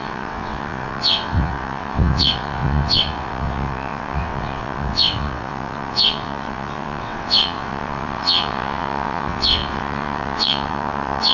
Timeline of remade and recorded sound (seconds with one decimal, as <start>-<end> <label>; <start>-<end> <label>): 0.0-11.3 remade